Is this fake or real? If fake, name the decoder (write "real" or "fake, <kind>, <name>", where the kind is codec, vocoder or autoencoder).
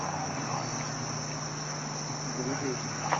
real